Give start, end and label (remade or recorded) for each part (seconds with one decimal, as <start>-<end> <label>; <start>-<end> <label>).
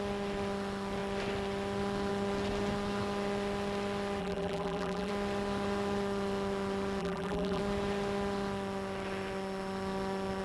0.0-4.2 recorded; 4.2-5.1 remade; 5.1-7.0 recorded; 7.0-7.6 remade; 7.6-10.4 recorded